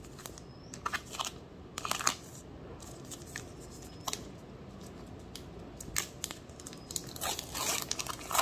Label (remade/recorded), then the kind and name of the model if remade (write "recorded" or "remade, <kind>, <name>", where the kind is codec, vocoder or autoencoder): recorded